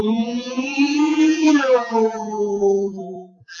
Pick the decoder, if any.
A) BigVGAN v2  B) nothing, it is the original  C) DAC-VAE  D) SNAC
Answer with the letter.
A